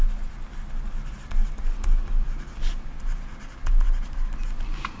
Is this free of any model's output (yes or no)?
yes